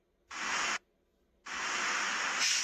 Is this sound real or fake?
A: real